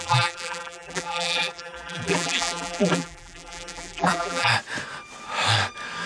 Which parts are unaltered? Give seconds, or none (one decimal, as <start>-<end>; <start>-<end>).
4.5-6.1